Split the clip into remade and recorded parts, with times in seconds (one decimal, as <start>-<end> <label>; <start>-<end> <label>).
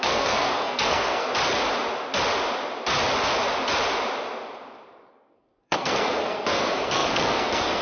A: 0.0-1.3 remade; 1.3-5.1 recorded; 5.1-7.8 remade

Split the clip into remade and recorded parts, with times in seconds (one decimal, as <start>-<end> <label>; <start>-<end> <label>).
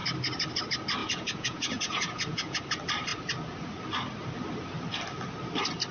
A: 0.0-1.0 recorded; 1.0-2.6 remade; 2.6-5.9 recorded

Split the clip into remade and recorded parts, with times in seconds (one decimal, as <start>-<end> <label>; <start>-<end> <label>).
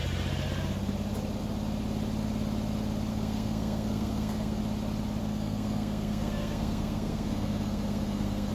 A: 0.0-3.1 recorded; 3.1-4.6 remade; 4.6-5.2 recorded; 5.2-8.5 remade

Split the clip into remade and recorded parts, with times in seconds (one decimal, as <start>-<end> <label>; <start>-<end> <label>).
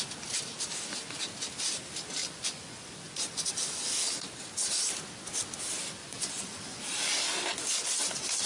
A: 0.0-2.2 recorded; 2.2-3.5 remade; 3.5-6.0 recorded; 6.0-6.8 remade; 6.8-8.5 recorded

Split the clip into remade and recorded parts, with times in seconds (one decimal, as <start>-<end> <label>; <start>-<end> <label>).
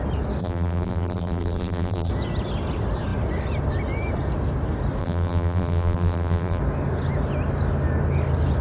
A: 0.0-0.4 recorded; 0.4-2.1 remade; 2.1-5.0 recorded; 5.0-6.6 remade; 6.6-8.6 recorded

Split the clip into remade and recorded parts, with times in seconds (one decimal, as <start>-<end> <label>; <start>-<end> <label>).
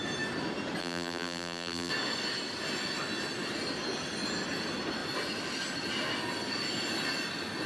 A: 0.0-0.8 recorded; 0.8-1.9 remade; 1.9-7.7 recorded